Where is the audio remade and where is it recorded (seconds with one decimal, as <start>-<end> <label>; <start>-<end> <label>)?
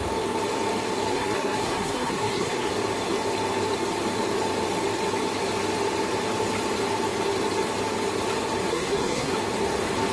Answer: 0.0-1.1 recorded; 1.1-2.7 remade; 2.7-8.7 recorded; 8.7-9.3 remade; 9.3-10.1 recorded